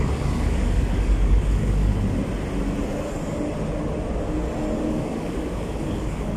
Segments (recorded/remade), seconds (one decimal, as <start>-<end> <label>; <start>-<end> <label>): 0.0-1.9 remade; 1.9-4.8 recorded; 4.8-6.4 remade